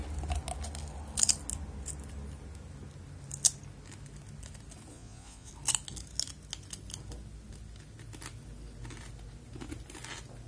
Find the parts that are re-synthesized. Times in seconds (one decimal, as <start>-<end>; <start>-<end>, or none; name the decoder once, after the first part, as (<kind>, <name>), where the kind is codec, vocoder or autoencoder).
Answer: 4.9-5.5 (vocoder, Vocos)